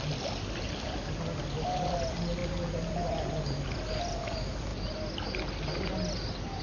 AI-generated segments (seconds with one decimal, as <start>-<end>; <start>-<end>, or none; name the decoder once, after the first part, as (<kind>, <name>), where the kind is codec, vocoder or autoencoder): none